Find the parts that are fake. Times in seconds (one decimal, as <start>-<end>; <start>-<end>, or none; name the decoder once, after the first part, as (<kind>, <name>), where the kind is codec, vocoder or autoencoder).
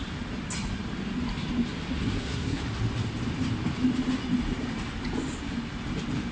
2.0-2.6 (codec, SNAC)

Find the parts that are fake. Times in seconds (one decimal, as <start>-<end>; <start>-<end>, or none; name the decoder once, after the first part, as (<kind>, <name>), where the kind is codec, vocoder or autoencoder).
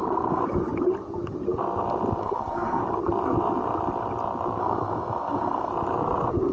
0.0-0.4 (codec, SNAC); 2.2-2.8; 4.6-5.7